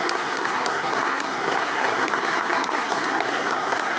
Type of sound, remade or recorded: remade